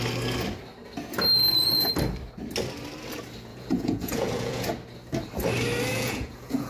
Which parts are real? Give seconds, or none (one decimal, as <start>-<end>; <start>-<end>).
0.0-3.5; 4.6-5.9